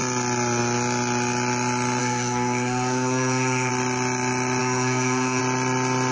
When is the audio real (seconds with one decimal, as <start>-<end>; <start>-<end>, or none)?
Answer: 0.0-2.0; 3.7-4.6; 5.4-6.1